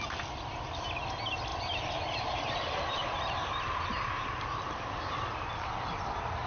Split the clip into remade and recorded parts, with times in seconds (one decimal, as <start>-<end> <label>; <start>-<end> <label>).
0.0-1.5 recorded; 1.5-5.1 remade; 5.1-6.5 recorded